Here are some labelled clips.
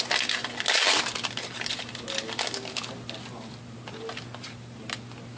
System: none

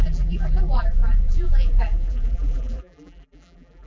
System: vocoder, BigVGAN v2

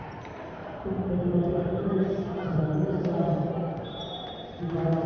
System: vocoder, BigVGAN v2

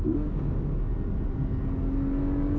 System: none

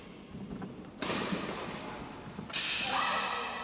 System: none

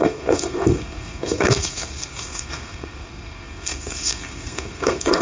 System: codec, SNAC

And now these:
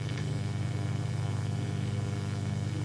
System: codec, SNAC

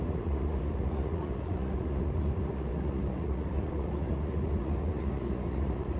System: vocoder, Vocos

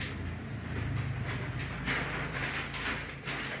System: none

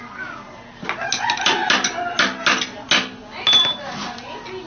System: none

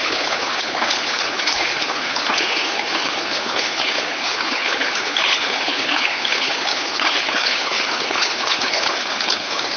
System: codec, HILCodec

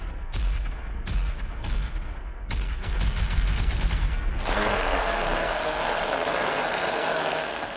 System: codec, SNAC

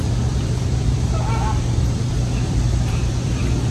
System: vocoder, BigVGAN v2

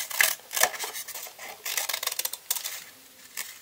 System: none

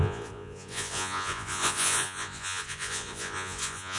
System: vocoder, Vocos